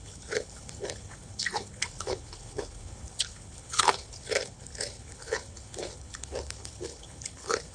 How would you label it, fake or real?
fake